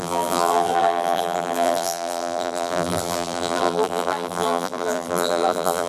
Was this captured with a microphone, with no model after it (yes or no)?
no